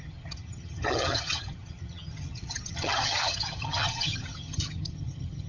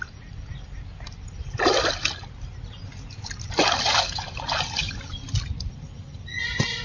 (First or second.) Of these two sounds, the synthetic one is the first